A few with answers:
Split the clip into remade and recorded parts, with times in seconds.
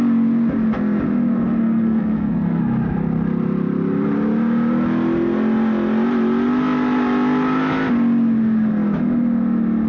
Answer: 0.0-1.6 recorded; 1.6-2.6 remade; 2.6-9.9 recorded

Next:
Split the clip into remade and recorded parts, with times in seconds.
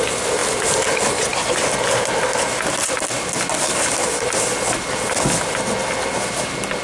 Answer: 0.0-6.8 recorded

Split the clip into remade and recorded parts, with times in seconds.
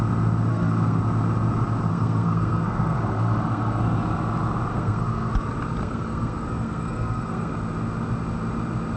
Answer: 0.0-0.5 recorded; 0.5-1.0 remade; 1.0-1.9 recorded; 1.9-3.8 remade; 3.8-4.7 recorded; 4.7-5.3 remade; 5.3-5.8 recorded; 5.8-7.5 remade; 7.5-9.0 recorded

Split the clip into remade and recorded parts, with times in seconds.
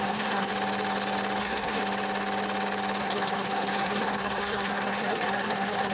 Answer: 0.0-0.5 remade; 0.5-1.4 recorded; 1.4-1.8 remade; 1.8-3.0 recorded; 3.0-5.9 remade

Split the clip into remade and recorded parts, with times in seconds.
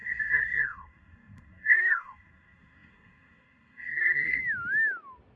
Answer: 0.0-4.4 remade; 4.4-5.4 recorded